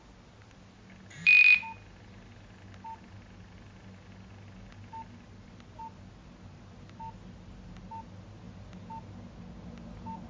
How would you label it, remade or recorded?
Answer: recorded